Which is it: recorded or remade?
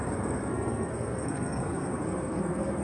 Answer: remade